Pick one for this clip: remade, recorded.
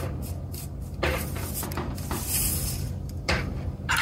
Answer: recorded